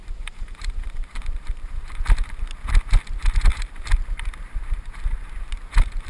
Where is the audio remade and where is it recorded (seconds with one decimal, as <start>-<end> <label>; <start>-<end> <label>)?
0.0-2.0 remade; 2.0-3.5 recorded; 3.5-5.5 remade; 5.5-6.1 recorded